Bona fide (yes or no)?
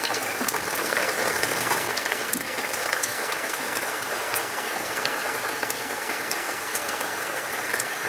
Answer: no